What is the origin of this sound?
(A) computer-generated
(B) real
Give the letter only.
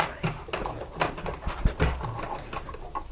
B